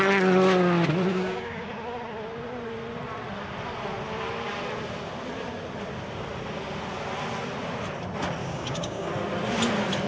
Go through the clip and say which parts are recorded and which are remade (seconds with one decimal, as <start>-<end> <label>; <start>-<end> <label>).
0.0-1.1 recorded; 1.1-1.7 remade; 1.7-8.4 recorded; 8.4-9.1 remade; 9.1-10.1 recorded